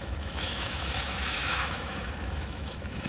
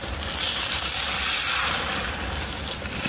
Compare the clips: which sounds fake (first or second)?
first